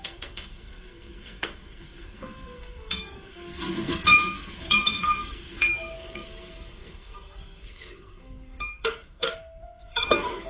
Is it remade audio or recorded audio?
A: remade